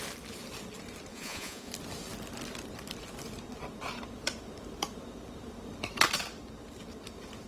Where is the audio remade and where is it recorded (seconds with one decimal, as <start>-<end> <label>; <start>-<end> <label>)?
0.0-1.1 recorded; 1.1-1.7 remade; 1.7-7.5 recorded